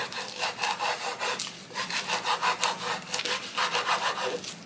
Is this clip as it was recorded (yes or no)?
no